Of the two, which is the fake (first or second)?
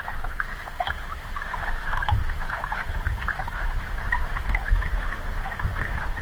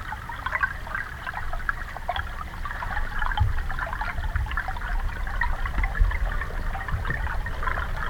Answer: first